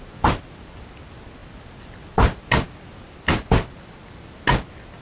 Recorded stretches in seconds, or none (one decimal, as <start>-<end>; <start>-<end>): 0.0-5.0